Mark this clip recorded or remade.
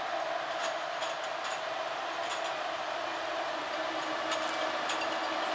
recorded